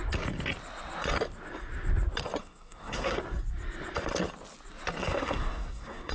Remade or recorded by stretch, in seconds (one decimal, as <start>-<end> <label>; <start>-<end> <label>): 0.0-2.4 recorded; 2.4-3.2 remade; 3.2-5.0 recorded; 5.0-6.1 remade